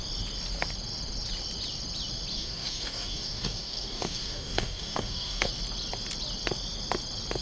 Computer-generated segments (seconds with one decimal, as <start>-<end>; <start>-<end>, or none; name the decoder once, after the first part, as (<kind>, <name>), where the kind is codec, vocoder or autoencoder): 2.3-5.5 (codec, DAC)